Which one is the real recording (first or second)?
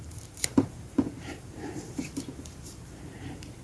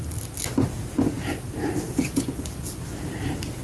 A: second